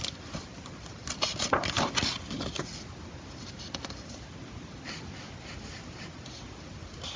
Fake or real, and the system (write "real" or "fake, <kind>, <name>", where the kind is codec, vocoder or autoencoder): real